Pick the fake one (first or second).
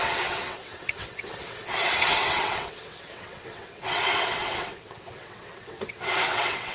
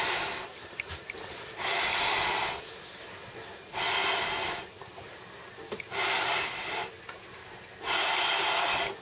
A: first